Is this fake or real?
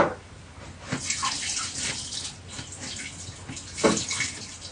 real